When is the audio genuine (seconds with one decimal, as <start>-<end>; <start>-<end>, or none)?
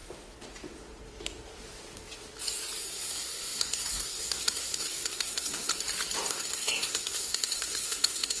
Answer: 0.0-2.8; 5.7-6.3